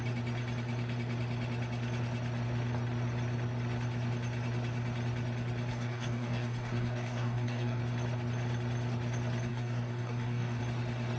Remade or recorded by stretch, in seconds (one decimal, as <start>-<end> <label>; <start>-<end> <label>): 0.0-5.7 recorded; 5.7-7.8 remade; 7.8-9.5 recorded; 9.5-10.6 remade; 10.6-11.2 recorded